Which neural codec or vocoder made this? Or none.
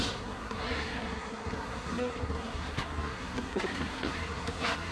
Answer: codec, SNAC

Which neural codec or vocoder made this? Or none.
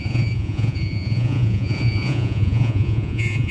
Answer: vocoder, Vocos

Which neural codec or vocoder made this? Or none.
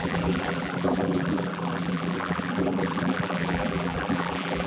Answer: vocoder, BigVGAN v2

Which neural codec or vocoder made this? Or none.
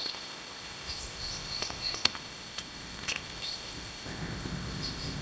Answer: codec, ZipCodec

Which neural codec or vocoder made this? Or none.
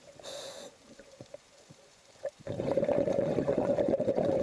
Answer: vocoder, Vocos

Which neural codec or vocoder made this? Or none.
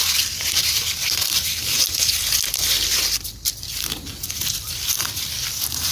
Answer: none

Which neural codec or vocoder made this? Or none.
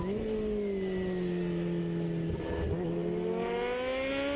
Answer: none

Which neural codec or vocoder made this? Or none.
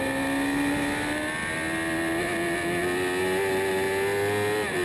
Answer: none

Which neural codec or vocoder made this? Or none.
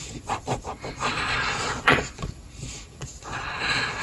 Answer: vocoder, Vocos